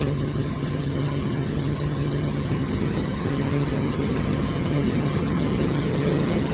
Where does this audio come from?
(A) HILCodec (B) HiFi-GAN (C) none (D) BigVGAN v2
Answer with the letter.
B